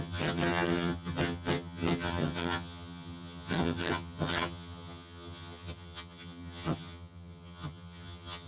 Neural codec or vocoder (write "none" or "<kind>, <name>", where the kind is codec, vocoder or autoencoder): vocoder, HiFi-GAN